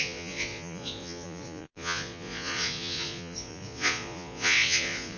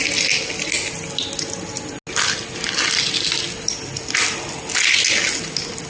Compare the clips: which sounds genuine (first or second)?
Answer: second